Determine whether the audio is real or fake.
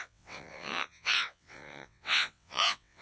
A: fake